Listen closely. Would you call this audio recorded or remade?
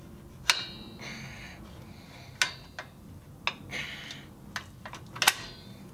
recorded